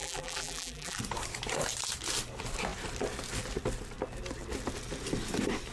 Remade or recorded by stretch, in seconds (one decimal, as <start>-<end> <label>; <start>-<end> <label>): 0.0-1.0 remade; 1.0-5.7 recorded